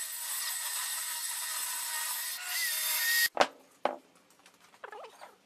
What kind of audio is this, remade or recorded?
recorded